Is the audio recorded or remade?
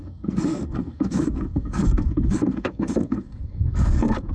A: remade